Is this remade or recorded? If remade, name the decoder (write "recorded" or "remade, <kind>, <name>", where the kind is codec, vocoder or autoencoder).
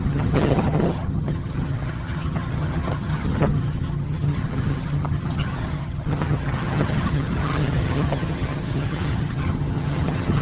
remade, vocoder, HiFi-GAN